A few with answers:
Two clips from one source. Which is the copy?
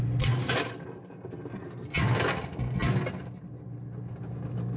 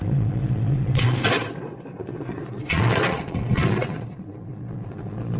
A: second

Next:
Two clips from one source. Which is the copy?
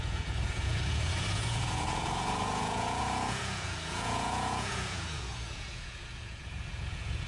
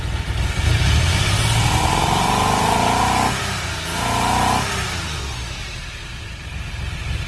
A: first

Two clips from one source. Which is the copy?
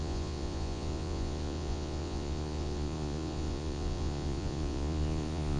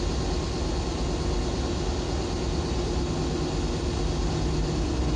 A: first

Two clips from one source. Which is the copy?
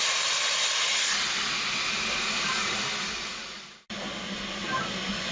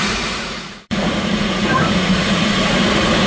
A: second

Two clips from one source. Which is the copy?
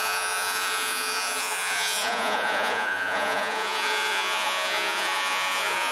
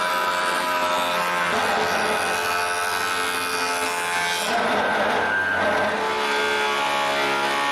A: first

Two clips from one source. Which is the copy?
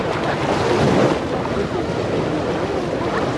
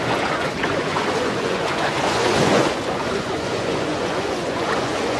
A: second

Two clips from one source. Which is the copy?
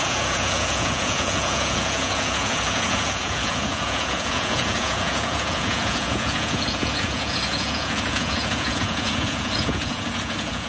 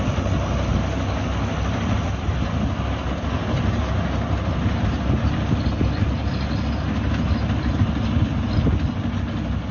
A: first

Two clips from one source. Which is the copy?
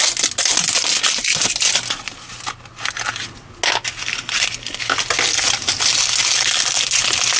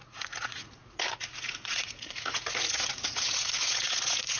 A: second